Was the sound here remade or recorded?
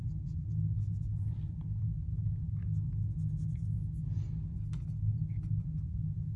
recorded